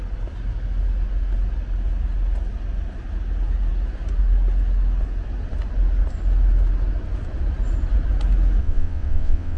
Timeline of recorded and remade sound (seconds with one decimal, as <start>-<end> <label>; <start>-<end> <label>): 0.0-8.6 recorded; 8.6-9.6 remade

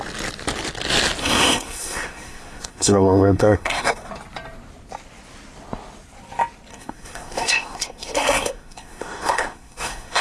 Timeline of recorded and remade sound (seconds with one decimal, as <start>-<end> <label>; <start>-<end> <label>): 0.0-1.2 recorded; 1.2-4.1 remade; 4.1-6.7 recorded; 6.7-10.2 remade